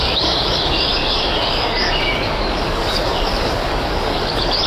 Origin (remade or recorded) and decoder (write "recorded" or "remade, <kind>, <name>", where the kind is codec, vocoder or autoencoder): remade, codec, DAC